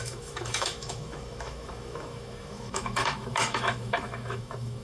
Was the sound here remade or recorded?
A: remade